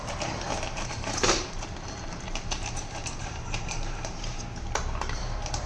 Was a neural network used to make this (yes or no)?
yes